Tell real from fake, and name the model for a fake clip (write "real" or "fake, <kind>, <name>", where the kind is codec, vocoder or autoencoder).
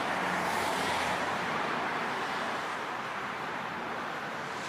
fake, vocoder, BigVGAN v2